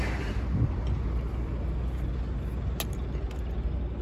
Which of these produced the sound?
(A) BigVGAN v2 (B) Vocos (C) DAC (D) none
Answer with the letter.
D